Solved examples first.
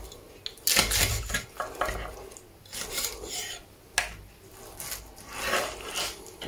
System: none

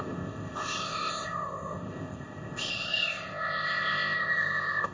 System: codec, ZipCodec